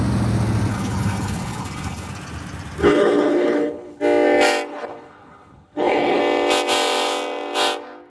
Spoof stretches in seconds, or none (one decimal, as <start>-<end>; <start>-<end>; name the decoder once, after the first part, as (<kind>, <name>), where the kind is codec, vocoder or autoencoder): 0.7-2.1 (codec, HILCodec); 2.8-4.0; 4.7-6.2